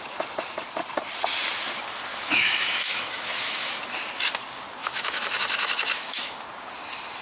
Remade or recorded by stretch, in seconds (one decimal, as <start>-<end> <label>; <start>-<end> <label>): 0.0-2.1 recorded; 2.1-3.8 remade; 3.8-4.8 recorded; 4.8-6.4 remade; 6.4-7.2 recorded